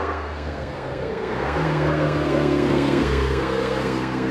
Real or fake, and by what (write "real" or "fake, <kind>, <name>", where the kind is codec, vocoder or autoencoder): fake, codec, SNAC